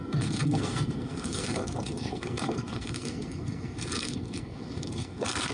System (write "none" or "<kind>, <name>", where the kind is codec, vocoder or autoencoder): codec, SNAC